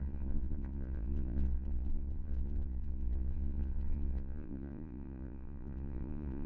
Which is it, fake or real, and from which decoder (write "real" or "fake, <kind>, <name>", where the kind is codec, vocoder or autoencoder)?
fake, vocoder, Vocos